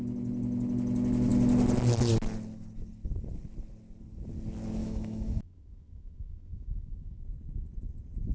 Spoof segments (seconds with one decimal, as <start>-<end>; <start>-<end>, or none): 4.8-7.2